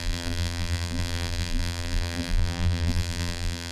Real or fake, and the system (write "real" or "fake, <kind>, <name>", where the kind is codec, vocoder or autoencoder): fake, vocoder, BigVGAN v2